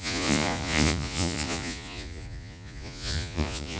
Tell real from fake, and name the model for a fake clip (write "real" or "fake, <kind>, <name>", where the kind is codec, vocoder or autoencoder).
fake, vocoder, Vocos